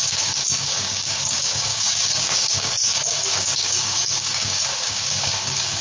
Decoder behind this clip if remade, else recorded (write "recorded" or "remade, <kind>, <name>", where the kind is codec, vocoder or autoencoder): remade, codec, DAC